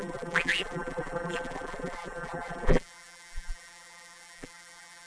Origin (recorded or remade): remade